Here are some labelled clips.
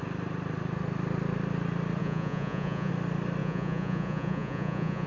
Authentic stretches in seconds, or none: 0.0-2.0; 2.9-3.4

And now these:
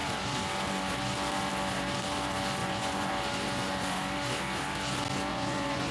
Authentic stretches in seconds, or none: 0.0-2.6; 3.1-5.3

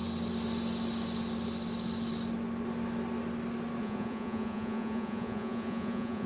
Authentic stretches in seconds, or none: 0.0-3.8

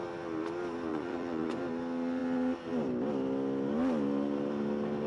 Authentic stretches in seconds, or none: 0.0-0.9; 1.6-5.1